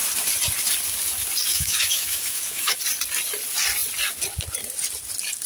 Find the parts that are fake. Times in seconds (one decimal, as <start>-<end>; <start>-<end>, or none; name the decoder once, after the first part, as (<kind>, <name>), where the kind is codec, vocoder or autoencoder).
1.5-2.8 (autoencoder, DAC-VAE)